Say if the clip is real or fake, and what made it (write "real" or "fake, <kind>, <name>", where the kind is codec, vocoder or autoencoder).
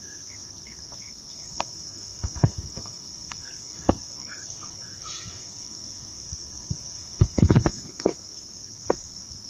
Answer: fake, codec, SNAC